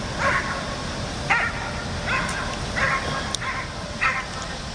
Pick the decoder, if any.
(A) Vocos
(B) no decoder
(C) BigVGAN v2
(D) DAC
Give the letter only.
B